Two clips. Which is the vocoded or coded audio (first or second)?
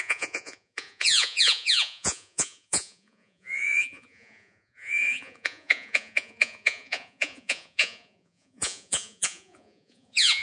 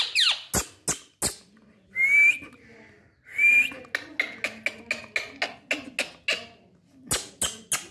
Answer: first